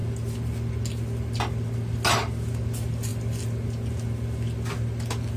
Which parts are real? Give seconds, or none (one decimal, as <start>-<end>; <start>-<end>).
0.0-5.4